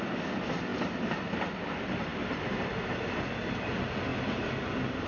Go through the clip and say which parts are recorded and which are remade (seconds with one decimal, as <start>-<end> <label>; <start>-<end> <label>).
0.0-5.1 recorded